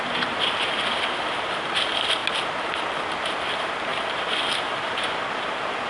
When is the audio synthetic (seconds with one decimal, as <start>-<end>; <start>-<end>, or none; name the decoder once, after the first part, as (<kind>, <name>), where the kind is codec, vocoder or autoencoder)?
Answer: 3.9-5.9 (vocoder, BigVGAN v2)